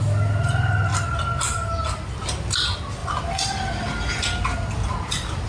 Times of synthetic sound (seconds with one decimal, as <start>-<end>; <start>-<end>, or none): none